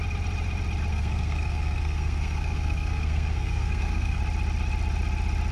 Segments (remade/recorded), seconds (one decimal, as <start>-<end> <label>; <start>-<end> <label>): 0.0-0.9 recorded; 0.9-4.2 remade; 4.2-5.5 recorded